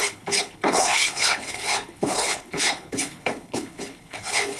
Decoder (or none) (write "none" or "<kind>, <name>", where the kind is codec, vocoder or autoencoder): codec, HILCodec